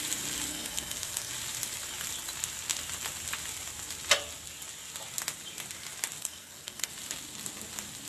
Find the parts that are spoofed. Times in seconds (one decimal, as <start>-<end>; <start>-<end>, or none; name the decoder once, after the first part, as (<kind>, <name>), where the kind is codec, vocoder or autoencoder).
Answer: 0.5-1.3 (codec, SNAC); 6.2-6.9